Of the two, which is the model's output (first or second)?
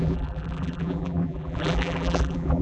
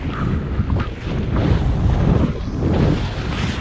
first